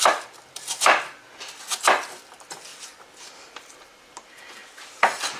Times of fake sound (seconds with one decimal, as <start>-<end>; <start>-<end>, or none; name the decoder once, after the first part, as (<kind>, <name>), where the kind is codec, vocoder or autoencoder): 2.7-5.4 (vocoder, BigVGAN v2)